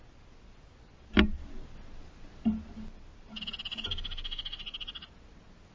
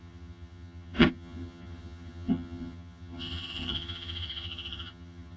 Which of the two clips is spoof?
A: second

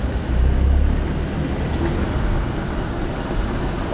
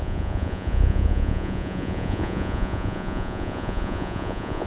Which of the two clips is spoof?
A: second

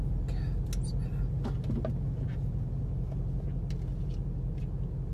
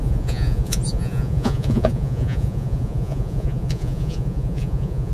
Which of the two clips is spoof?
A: second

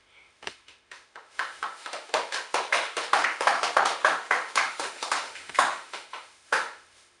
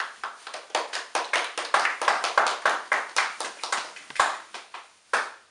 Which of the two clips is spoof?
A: first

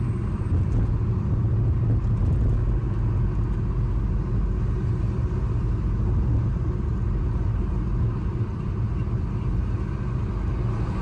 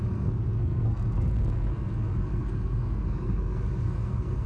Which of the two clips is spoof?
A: second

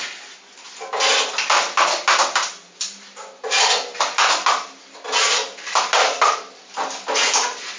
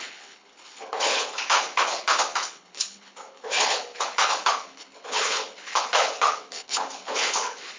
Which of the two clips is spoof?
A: second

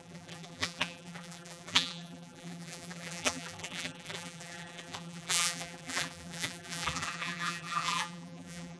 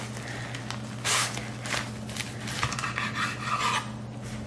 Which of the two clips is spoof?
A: first